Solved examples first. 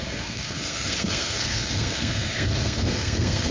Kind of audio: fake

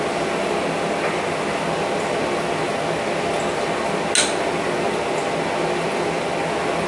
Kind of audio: real